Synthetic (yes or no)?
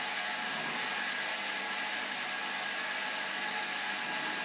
no